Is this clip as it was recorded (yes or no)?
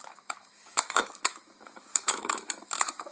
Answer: no